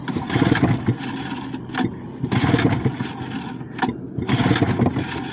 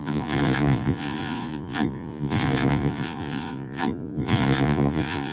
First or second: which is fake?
second